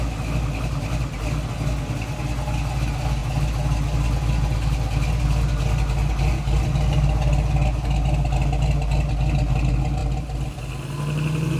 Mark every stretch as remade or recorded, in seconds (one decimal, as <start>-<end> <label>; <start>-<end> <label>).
0.0-11.6 recorded